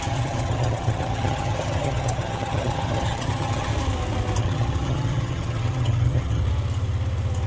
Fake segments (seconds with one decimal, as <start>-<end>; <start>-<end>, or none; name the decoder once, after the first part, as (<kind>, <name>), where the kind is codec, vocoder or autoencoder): 0.0-3.7 (vocoder, HiFi-GAN); 4.4-6.4